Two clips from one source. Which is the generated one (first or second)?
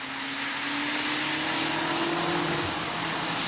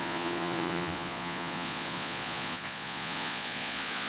second